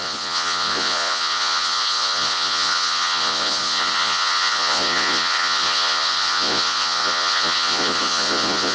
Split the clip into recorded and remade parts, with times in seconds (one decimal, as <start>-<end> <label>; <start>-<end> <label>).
0.0-8.7 remade